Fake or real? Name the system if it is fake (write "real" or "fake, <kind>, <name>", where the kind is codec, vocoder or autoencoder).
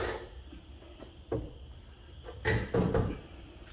real